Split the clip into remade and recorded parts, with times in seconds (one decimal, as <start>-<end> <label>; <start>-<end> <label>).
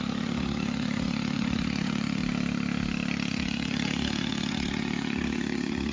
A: 0.0-2.2 remade; 2.2-3.3 recorded; 3.3-5.9 remade